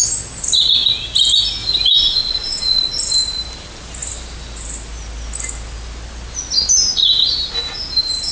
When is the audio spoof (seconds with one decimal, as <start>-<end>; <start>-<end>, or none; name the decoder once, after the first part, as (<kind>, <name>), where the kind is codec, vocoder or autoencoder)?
1.6-2.9 (vocoder, Vocos)